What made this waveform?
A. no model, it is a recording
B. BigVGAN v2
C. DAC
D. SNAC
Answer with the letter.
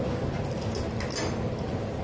A